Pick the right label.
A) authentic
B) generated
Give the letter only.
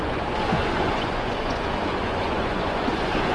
B